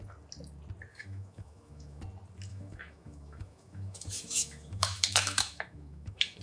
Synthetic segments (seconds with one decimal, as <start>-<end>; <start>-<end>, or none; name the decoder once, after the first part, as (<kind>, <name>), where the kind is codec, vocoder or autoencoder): 0.9-2.0 (autoencoder, DAC-VAE); 2.5-6.4